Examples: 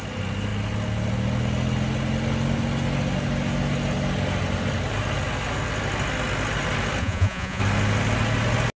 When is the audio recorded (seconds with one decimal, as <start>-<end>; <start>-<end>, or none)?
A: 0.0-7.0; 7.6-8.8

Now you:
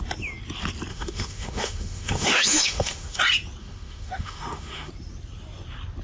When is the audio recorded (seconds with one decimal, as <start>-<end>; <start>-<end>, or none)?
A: 0.0-0.9; 3.2-3.6; 4.9-6.0

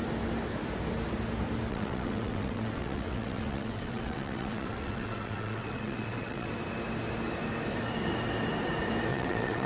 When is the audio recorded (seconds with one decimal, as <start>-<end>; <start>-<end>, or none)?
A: 0.0-1.7; 6.5-9.1

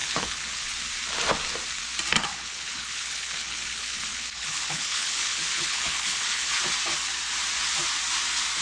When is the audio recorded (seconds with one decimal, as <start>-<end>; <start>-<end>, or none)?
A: 0.7-2.3; 6.6-8.6